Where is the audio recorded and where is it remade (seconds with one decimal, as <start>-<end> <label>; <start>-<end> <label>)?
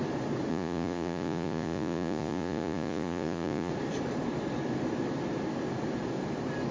0.0-0.5 recorded; 0.5-3.7 remade; 3.7-6.7 recorded